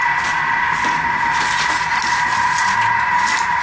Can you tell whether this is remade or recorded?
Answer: recorded